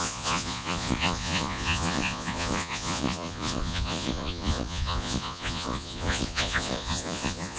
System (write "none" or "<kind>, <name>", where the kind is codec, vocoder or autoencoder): vocoder, Vocos